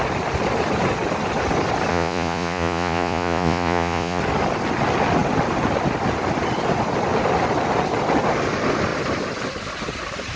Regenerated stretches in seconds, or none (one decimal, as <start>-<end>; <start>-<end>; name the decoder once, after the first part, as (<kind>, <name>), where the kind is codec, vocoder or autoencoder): 1.9-4.2 (vocoder, Vocos)